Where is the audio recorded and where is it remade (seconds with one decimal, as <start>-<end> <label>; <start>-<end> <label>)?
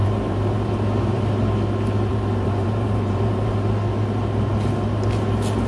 0.0-0.7 remade; 0.7-2.1 recorded; 2.1-3.7 remade; 3.7-5.7 recorded